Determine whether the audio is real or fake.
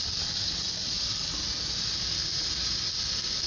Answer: real